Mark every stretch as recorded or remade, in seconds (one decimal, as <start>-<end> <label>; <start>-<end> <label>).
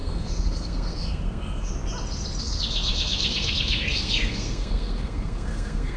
0.0-1.7 remade; 1.7-2.4 recorded; 2.4-6.0 remade